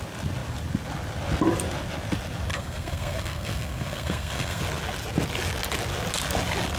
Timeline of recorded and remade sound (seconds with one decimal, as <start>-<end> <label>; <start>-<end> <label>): 0.0-2.5 recorded; 2.5-4.6 remade; 4.6-6.8 recorded